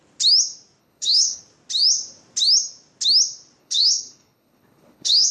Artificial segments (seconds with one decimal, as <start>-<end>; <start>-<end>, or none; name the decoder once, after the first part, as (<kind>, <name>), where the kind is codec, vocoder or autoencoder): 0.8-1.4 (codec, HILCodec); 3.6-5.3